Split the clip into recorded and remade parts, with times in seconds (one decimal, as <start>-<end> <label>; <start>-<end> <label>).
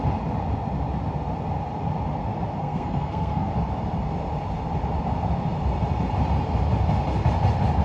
0.0-2.6 recorded; 2.6-3.5 remade; 3.5-7.8 recorded